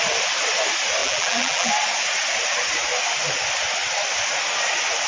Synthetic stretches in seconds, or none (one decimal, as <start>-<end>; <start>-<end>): 1.0-1.7